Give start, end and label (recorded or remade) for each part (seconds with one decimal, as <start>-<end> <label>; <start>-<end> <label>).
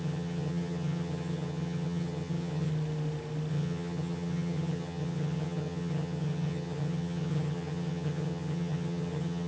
0.0-2.7 remade; 2.7-3.5 recorded; 3.5-9.5 remade